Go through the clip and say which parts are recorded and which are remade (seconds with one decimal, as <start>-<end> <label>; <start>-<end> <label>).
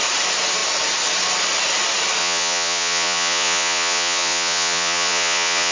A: 0.0-2.2 recorded; 2.2-5.7 remade